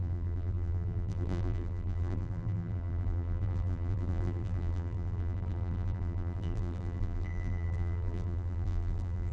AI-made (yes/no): yes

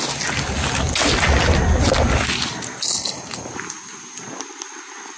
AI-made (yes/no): no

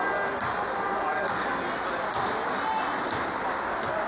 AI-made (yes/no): no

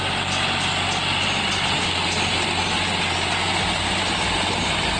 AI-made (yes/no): no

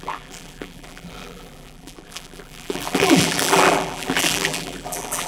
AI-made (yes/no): yes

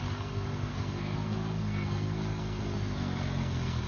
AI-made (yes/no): yes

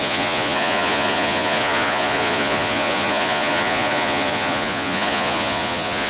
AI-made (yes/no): yes